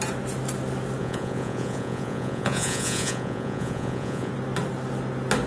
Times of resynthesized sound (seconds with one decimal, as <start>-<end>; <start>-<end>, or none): 1.0-4.3